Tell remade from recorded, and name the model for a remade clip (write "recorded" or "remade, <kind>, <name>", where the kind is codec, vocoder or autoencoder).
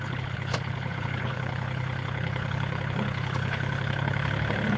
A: remade, codec, HILCodec